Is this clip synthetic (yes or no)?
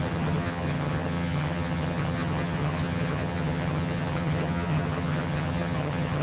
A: yes